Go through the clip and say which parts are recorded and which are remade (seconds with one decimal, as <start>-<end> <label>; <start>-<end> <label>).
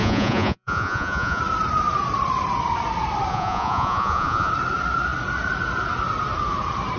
0.0-1.4 remade; 1.4-3.3 recorded; 3.3-4.5 remade; 4.5-7.0 recorded